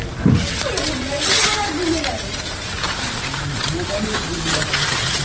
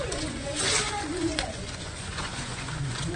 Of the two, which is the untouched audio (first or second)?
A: first